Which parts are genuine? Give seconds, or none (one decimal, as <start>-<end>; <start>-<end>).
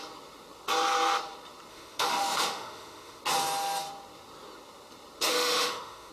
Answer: 0.0-1.7; 3.2-5.3